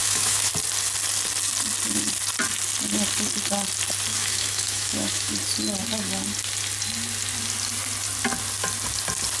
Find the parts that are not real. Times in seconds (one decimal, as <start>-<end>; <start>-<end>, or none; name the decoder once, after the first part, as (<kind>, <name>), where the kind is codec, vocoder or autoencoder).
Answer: 0.0-0.5 (autoencoder, DAC-VAE); 4.1-5.3